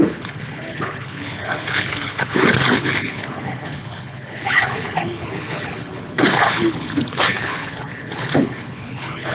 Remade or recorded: remade